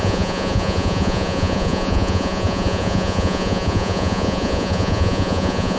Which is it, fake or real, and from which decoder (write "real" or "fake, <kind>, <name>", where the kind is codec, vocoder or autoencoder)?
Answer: fake, vocoder, Vocos